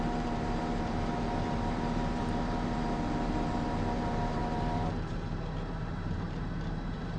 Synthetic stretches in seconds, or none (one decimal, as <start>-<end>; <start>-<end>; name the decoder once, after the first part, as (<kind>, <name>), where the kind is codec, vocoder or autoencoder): 0.0-7.2 (vocoder, BigVGAN v2)